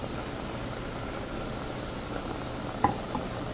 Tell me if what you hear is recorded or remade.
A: recorded